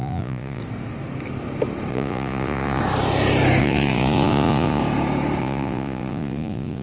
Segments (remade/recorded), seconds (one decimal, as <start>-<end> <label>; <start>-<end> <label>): 0.0-0.6 remade; 0.6-1.9 recorded; 1.9-2.8 remade; 2.8-3.6 recorded; 3.6-4.8 remade; 4.8-5.4 recorded; 5.4-6.8 remade

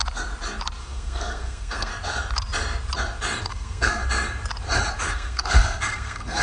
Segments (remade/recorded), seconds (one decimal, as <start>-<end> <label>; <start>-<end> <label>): 0.0-0.8 recorded; 0.8-1.9 remade; 1.9-3.4 recorded; 3.4-4.0 remade; 4.0-4.9 recorded; 4.9-6.4 remade

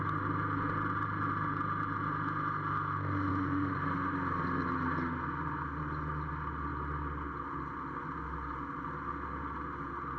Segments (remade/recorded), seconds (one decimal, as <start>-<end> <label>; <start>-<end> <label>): 0.0-3.3 recorded; 3.3-3.8 remade; 3.8-10.2 recorded

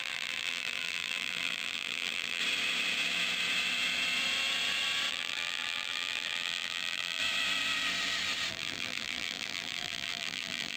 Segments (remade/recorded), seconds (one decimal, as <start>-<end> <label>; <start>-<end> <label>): 0.0-2.4 remade; 2.4-5.1 recorded; 5.1-7.2 remade; 7.2-8.5 recorded; 8.5-10.8 remade

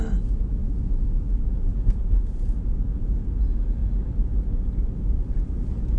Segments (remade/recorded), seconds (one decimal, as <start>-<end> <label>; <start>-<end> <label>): 0.0-1.7 recorded; 1.7-2.9 remade; 2.9-3.8 recorded; 3.8-6.0 remade

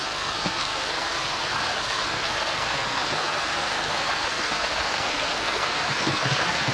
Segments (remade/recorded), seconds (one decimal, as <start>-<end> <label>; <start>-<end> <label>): 0.0-6.7 remade